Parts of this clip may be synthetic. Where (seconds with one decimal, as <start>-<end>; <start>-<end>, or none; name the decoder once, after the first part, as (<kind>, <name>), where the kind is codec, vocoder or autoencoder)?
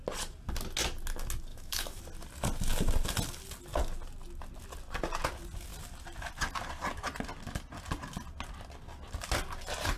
1.5-2.0 (autoencoder, DAC-VAE)